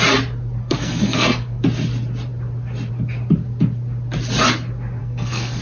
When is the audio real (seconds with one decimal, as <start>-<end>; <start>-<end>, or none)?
0.0-0.6; 1.6-5.0